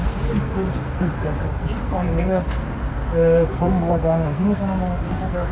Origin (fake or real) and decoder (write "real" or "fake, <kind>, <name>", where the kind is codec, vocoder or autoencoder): fake, codec, SNAC